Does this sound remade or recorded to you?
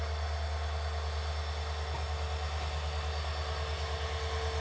recorded